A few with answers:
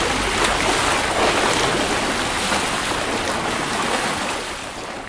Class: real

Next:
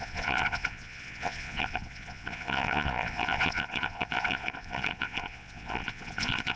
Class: fake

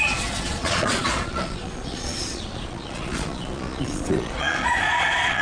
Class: fake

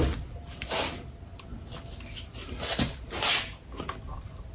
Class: real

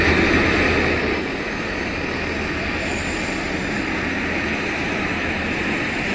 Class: real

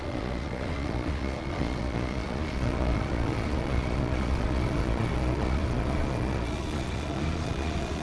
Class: fake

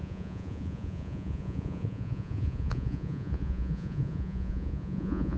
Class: fake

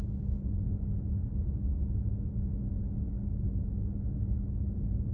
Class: real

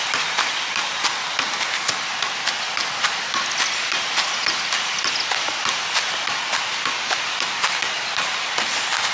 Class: real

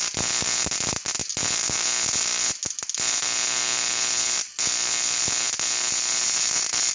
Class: real